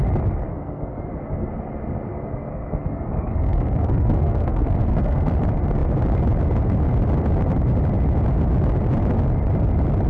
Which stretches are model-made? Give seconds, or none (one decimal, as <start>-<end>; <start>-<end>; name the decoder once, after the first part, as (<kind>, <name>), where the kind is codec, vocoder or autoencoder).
0.5-1.5 (codec, SNAC); 2.1-5.3